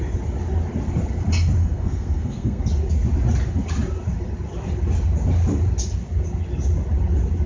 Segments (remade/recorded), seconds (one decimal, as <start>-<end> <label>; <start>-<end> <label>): 0.0-1.6 recorded; 1.6-2.6 remade; 2.6-7.5 recorded